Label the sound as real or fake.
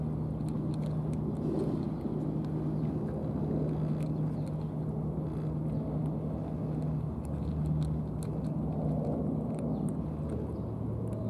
real